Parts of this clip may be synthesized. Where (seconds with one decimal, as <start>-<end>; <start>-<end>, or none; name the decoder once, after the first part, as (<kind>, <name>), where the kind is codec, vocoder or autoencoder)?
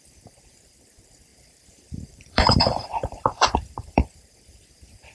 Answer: 1.3-4.2 (vocoder, BigVGAN v2)